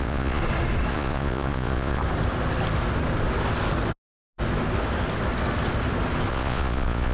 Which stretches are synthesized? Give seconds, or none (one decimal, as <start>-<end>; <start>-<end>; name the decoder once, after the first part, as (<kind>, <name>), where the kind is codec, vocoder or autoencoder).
0.0-0.4 (vocoder, Vocos); 0.9-2.0; 6.3-7.1